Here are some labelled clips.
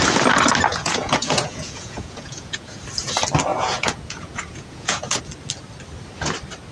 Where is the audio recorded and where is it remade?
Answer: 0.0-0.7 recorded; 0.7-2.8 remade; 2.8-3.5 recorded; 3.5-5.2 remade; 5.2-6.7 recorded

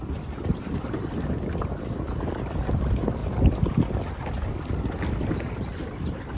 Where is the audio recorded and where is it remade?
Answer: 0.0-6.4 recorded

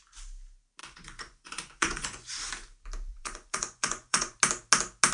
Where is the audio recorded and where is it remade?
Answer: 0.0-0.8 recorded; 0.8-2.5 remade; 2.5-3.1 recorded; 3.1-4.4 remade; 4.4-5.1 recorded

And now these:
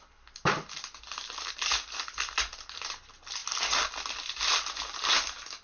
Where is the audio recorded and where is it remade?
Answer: 0.0-5.6 recorded